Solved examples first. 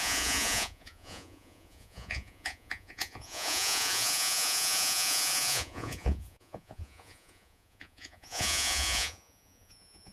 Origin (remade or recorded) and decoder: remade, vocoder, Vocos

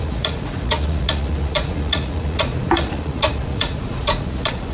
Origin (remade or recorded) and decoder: remade, vocoder, Vocos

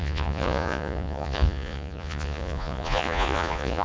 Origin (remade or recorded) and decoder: remade, vocoder, Vocos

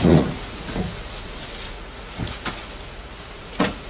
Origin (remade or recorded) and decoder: remade, vocoder, Vocos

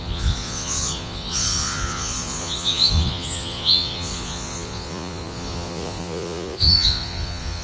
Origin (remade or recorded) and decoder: remade, vocoder, Vocos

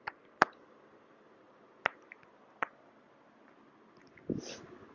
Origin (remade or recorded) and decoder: recorded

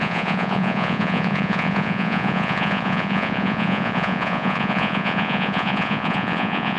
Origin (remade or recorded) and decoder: remade, vocoder, Vocos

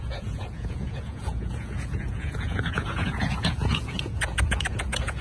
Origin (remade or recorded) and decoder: remade, vocoder, Vocos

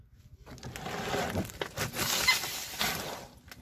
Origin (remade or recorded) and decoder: recorded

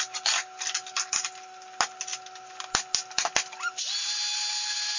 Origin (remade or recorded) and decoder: recorded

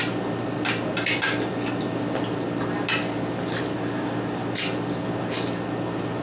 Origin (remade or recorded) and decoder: recorded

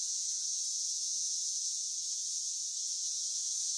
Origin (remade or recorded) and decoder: remade, vocoder, Vocos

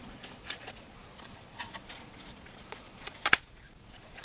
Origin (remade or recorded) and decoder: remade, vocoder, Vocos